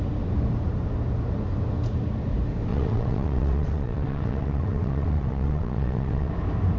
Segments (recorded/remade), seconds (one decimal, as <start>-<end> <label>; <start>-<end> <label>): 0.0-2.7 recorded; 2.7-6.3 remade; 6.3-6.8 recorded